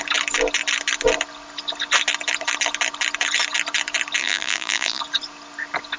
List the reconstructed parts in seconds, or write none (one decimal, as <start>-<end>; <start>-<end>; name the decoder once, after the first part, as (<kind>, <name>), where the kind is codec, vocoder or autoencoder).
4.2-5.0 (vocoder, BigVGAN v2)